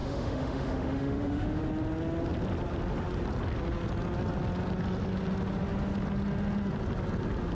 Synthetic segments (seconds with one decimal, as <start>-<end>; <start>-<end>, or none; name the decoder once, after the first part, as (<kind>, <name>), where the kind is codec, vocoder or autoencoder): 0.0-1.6 (autoencoder, DAC-VAE)